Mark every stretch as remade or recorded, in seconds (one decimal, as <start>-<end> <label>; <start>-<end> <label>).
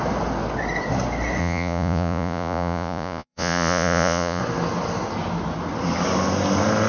0.0-1.4 recorded; 1.4-4.4 remade; 4.4-6.9 recorded